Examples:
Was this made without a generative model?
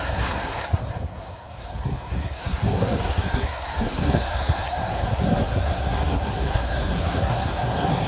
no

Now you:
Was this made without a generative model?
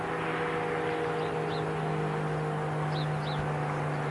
yes